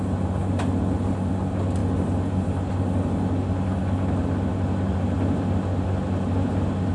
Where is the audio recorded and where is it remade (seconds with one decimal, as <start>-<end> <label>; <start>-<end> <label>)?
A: 0.0-6.9 recorded